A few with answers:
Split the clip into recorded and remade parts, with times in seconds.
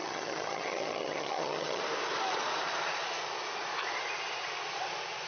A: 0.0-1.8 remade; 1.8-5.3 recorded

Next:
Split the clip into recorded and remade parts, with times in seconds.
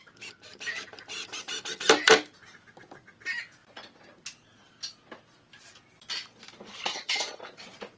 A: 0.0-6.9 recorded; 6.9-7.4 remade; 7.4-8.0 recorded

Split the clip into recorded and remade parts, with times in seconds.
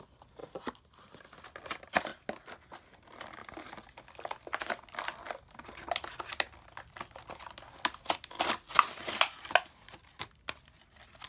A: 0.0-11.3 recorded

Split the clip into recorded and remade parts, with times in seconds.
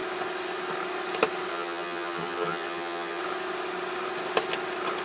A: 0.0-1.5 recorded; 1.5-3.2 remade; 3.2-5.0 recorded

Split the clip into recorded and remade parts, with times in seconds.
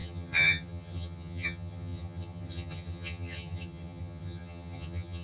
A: 0.0-5.2 remade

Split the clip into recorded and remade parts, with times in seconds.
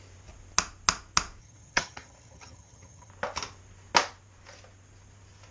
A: 0.0-1.4 recorded; 1.4-3.1 remade; 3.1-5.5 recorded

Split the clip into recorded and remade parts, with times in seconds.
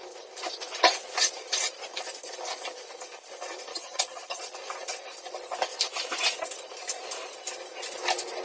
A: 0.0-3.7 recorded; 3.7-4.4 remade; 4.4-8.4 recorded